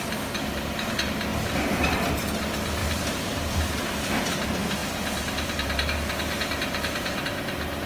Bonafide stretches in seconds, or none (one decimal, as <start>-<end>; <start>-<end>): 0.0-1.3; 1.9-2.8; 4.2-4.8; 7.2-7.9